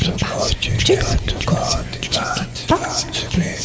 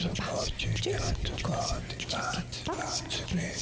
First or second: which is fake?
first